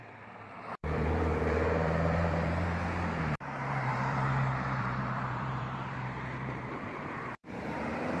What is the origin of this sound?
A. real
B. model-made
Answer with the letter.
B